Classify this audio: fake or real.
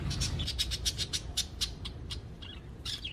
fake